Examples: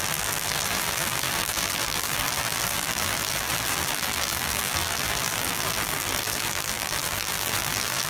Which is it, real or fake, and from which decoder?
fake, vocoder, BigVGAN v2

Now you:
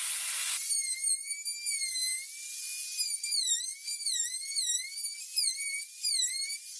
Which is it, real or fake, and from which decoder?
real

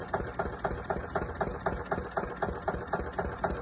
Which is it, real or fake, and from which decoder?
real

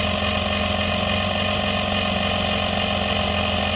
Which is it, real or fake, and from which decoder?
real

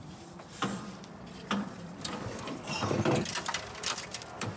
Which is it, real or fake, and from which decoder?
fake, vocoder, BigVGAN v2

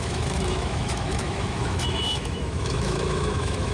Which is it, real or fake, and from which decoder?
fake, autoencoder, DAC-VAE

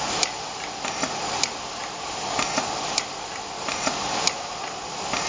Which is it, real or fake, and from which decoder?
real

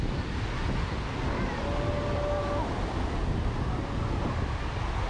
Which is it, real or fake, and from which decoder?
real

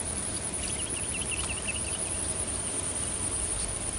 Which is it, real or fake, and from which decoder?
fake, vocoder, BigVGAN v2